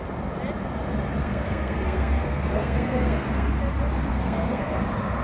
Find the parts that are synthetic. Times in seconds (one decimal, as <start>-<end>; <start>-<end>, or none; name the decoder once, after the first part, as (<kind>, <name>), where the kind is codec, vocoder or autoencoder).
1.2-3.5 (codec, SNAC); 4.1-4.8